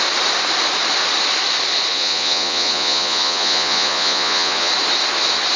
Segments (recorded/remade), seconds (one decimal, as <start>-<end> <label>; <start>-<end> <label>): 0.0-1.9 recorded; 1.9-4.7 remade; 4.7-5.6 recorded